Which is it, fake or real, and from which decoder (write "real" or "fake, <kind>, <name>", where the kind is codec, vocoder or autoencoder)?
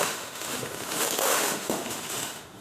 fake, autoencoder, DAC-VAE